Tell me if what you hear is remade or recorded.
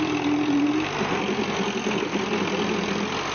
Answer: recorded